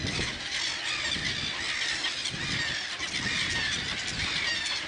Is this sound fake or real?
real